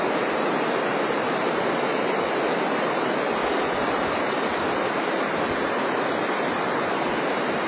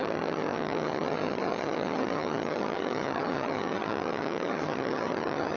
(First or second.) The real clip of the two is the first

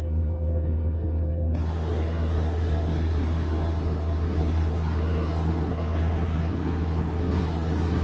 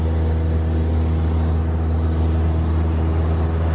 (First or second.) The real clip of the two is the second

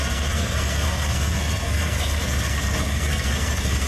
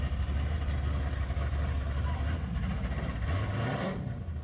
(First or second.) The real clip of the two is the second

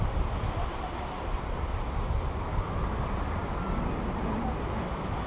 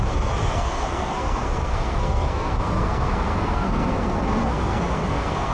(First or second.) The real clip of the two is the first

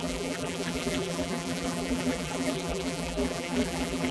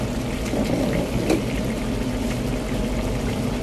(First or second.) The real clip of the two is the second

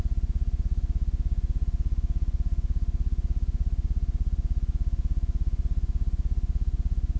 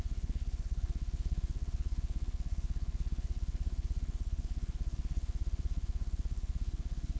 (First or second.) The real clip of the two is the first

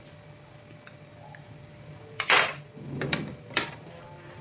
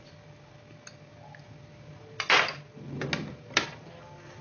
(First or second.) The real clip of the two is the second